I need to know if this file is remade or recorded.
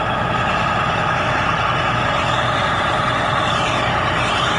recorded